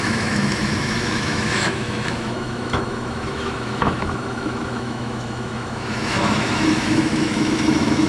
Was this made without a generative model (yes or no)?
no